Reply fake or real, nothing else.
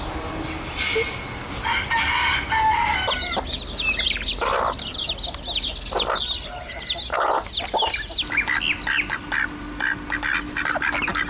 real